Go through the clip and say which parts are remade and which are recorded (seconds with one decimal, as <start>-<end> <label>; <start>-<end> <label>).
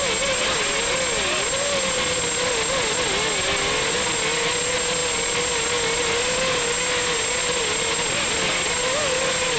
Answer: 0.0-9.6 recorded